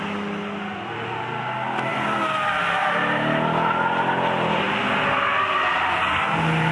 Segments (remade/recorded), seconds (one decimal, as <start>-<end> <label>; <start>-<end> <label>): 0.0-6.7 recorded